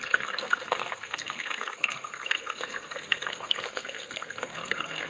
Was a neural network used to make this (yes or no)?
yes